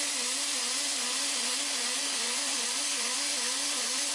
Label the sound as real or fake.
fake